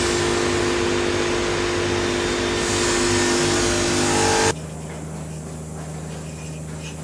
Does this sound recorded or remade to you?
recorded